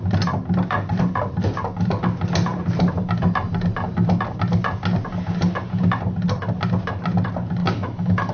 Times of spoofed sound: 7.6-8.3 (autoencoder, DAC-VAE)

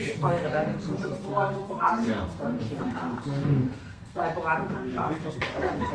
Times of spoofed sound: 0.0-4.2 (codec, SNAC); 4.7-5.9

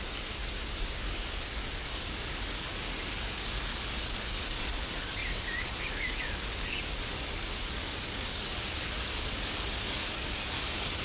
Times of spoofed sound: 0.0-11.0 (codec, DAC)

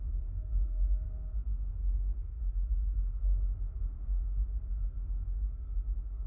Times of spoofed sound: 0.0-3.2 (codec, SNAC); 3.8-4.2; 4.7-6.3

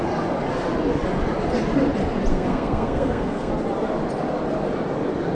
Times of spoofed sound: 2.3-3.5 (codec, SNAC)